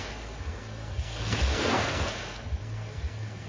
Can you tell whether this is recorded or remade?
remade